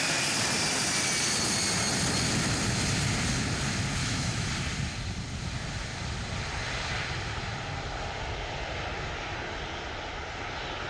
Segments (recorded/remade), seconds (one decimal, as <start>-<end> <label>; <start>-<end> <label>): 0.0-4.0 recorded; 4.0-4.5 remade; 4.5-10.9 recorded